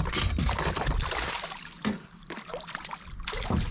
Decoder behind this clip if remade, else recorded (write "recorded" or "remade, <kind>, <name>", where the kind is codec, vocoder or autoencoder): remade, vocoder, BigVGAN v2